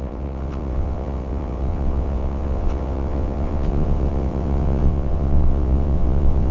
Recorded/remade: remade